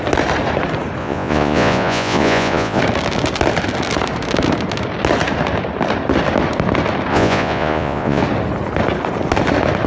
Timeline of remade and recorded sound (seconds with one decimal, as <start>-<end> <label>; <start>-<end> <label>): 0.0-1.0 recorded; 1.0-2.8 remade; 2.8-7.1 recorded; 7.1-8.2 remade; 8.2-9.9 recorded